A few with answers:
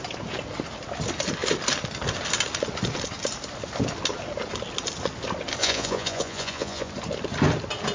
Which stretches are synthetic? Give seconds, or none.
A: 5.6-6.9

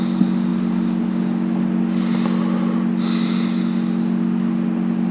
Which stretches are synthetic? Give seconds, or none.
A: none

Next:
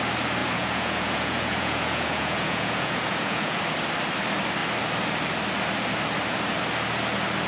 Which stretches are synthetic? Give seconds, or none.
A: 0.4-3.6

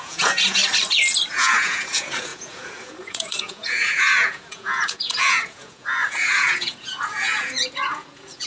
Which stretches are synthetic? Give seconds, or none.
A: 0.0-0.6; 1.3-8.5

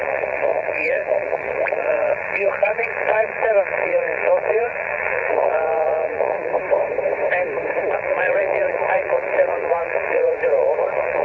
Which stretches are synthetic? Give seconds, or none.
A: 0.0-6.5; 7.9-11.2